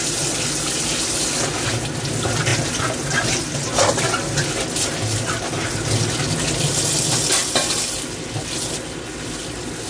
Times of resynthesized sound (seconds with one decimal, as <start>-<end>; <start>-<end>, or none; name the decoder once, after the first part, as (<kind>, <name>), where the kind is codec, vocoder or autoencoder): none